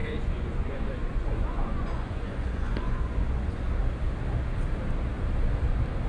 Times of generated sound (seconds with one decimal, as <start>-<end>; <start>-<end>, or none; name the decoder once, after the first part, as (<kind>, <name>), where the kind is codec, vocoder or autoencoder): 0.0-3.7 (vocoder, Vocos)